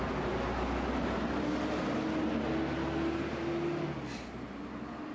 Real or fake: real